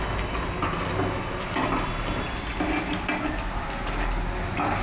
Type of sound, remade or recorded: recorded